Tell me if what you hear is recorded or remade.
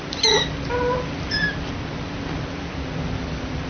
recorded